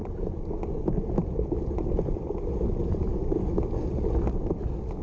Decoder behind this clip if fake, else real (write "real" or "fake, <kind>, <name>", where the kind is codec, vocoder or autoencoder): real